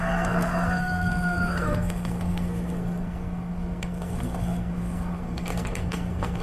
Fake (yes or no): yes